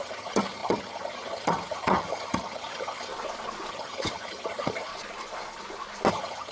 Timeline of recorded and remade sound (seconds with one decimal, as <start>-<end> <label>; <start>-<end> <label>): 0.0-3.1 remade; 3.1-3.7 recorded; 3.7-4.9 remade; 4.9-6.1 recorded; 6.1-6.5 remade